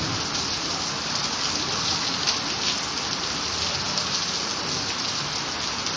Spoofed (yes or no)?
no